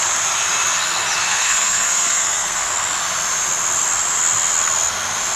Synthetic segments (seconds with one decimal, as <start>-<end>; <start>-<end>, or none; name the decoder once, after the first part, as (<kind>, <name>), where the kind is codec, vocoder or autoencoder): 1.2-2.7 (codec, SNAC)